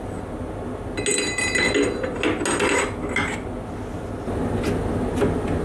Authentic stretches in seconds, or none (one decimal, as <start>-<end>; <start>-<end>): 0.0-5.6